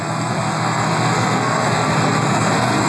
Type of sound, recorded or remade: remade